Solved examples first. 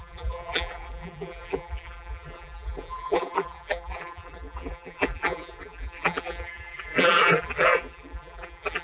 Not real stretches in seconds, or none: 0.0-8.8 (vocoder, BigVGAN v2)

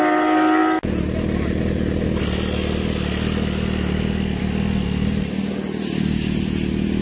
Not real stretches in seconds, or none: none

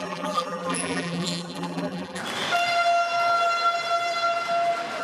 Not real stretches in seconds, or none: 0.0-2.2 (vocoder, BigVGAN v2)

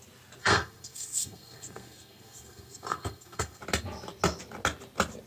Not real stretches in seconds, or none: 0.4-3.6 (codec, SNAC)

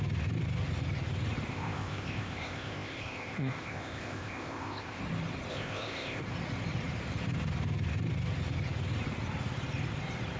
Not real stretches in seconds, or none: 1.5-5.0 (codec, ZipCodec); 5.5-6.2

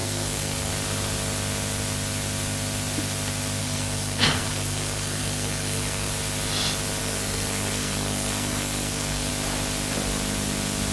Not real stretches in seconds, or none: 0.0-0.7 (codec, SNAC); 3.6-6.1; 7.0-9.3

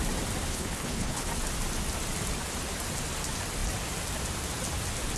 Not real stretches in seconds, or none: 0.5-1.3 (codec, HILCodec)

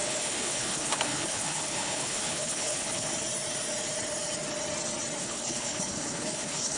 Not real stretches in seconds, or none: 0.0-3.1 (codec, HILCodec); 5.2-6.8